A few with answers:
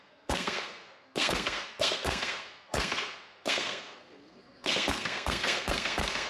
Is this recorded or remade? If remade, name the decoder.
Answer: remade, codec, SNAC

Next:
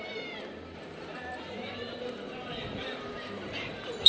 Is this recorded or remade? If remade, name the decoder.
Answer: remade, vocoder, BigVGAN v2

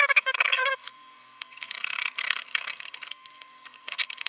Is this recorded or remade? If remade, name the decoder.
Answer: remade, codec, SNAC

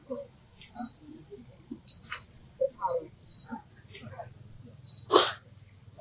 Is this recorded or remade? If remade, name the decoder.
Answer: recorded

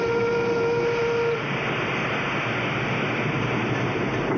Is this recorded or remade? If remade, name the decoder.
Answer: recorded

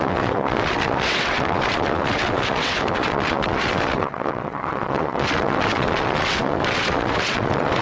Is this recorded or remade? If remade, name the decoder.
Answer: remade, vocoder, WaveNeXt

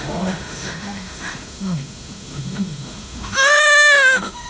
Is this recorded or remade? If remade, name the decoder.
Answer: remade, autoencoder, DAC-VAE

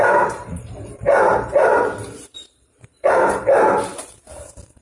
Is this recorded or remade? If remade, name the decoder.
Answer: remade, vocoder, BigVGAN v2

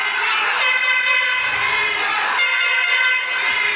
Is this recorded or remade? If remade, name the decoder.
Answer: recorded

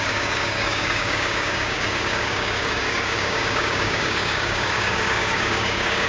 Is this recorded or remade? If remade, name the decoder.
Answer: remade, codec, DAC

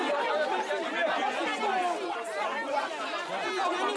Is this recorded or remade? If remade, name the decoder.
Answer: recorded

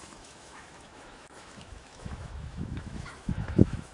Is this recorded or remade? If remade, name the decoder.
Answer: remade, autoencoder, DAC-VAE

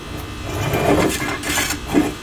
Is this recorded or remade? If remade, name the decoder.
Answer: recorded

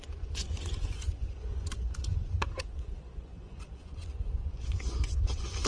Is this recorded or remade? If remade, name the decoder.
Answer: remade, vocoder, Vocos